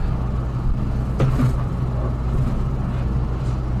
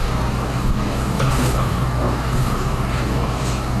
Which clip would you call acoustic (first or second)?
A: first